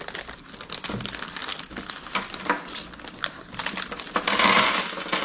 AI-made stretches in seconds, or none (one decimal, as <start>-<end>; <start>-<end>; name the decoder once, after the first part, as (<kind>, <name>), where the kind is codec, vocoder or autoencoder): none